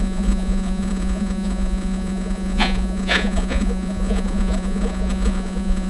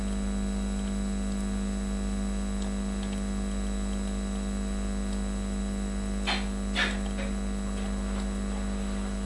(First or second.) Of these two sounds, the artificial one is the first